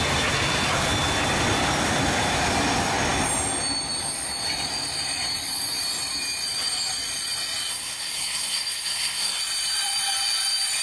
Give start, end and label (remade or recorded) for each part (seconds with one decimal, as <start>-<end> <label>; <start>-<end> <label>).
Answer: 0.0-7.7 recorded; 7.7-9.4 remade; 9.4-10.8 recorded